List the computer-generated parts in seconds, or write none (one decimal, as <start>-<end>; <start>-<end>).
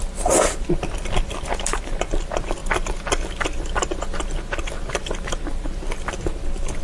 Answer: none